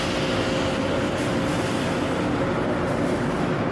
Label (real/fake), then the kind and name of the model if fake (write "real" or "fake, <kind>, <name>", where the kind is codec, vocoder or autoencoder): real